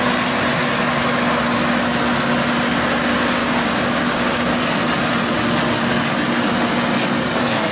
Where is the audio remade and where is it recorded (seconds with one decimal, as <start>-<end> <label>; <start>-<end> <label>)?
0.0-3.4 recorded; 3.4-4.6 remade; 4.6-7.7 recorded